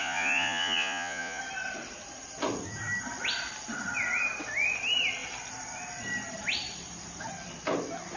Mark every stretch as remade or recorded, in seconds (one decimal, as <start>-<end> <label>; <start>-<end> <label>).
0.0-1.4 remade; 1.4-8.2 recorded